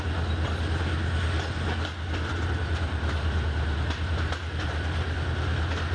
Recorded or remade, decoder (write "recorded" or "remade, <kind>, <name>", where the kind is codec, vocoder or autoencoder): recorded